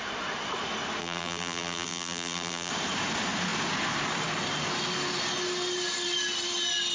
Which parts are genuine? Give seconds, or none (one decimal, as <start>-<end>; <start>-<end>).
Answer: 0.0-1.0; 2.7-6.9